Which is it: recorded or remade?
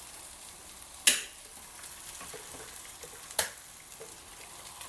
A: recorded